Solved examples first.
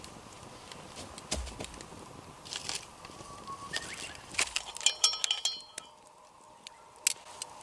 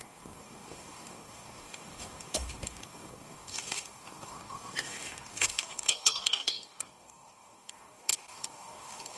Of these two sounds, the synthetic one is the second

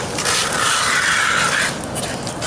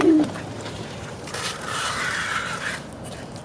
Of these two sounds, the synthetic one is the second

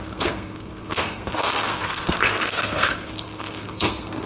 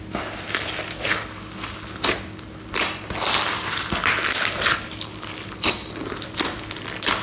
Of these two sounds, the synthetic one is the first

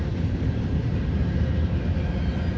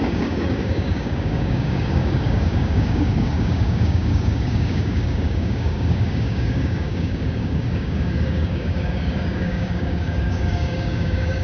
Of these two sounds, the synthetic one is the second